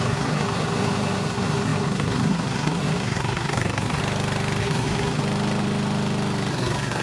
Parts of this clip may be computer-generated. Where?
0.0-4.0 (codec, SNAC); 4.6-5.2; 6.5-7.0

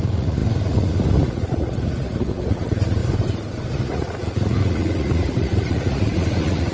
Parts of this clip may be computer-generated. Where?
0.0-3.0 (vocoder, Vocos); 3.7-6.7

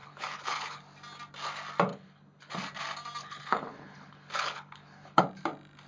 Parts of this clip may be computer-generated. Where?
0.0-0.8 (codec, HILCodec); 1.9-2.5; 3.2-5.2